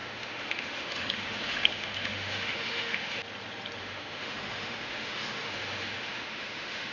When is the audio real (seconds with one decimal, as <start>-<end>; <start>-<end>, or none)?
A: 3.2-3.8